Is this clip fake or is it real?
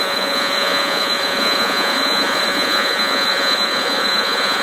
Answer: fake